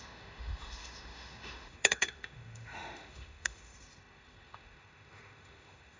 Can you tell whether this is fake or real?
fake